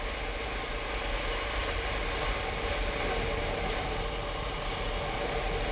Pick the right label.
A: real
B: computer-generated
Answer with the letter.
A